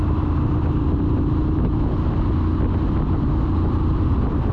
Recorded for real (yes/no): yes